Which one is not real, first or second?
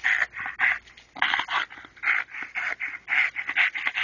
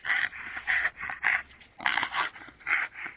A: second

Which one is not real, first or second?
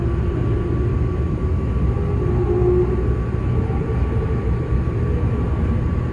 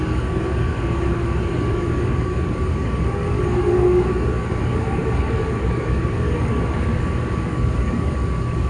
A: second